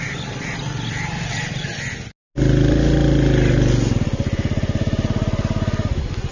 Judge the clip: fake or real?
real